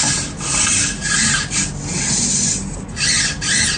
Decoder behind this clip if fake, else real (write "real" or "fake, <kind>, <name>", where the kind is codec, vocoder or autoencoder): real